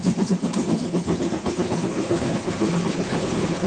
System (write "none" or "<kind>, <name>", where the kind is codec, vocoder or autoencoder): codec, HILCodec